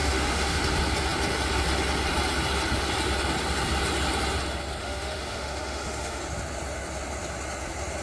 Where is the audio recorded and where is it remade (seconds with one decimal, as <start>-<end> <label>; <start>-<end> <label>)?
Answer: 0.0-0.6 remade; 0.6-4.8 recorded; 4.8-6.2 remade; 6.2-8.0 recorded